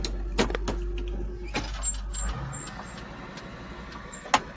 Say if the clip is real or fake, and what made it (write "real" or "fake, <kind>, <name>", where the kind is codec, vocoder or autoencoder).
real